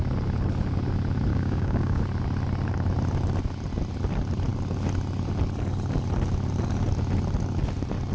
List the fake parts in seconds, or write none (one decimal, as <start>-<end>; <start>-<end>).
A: 1.3-2.0